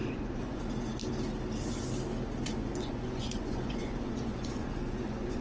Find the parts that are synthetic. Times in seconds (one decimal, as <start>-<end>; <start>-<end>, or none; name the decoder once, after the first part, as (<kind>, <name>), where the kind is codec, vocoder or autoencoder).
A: 0.0-0.6 (vocoder, Vocos); 2.6-5.4